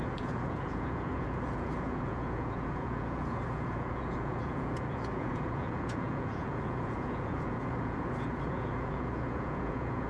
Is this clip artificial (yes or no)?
yes